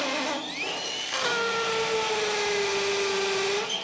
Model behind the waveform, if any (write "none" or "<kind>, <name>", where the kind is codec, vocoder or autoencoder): none